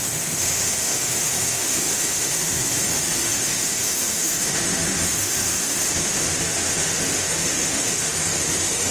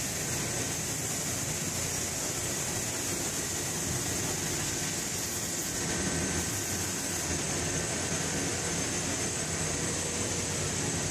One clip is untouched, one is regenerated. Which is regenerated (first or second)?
first